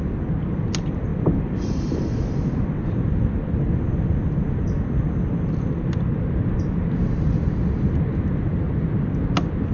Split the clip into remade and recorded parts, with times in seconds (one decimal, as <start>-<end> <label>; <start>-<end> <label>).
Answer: 0.0-9.7 recorded